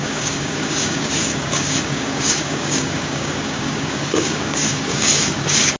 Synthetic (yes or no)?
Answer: yes